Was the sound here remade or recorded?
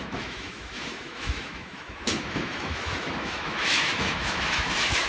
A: remade